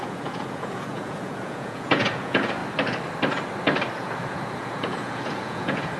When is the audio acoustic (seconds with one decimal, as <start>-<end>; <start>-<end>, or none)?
2.6-3.9